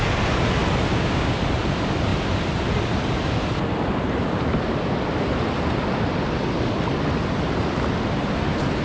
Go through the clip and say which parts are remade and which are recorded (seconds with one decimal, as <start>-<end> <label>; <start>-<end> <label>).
0.0-0.9 recorded; 0.9-1.4 remade; 1.4-8.8 recorded